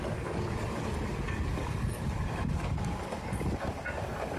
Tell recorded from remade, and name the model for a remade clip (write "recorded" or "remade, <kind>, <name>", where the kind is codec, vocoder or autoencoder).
remade, codec, DAC